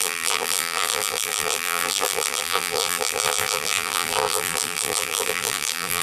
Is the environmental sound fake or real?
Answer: fake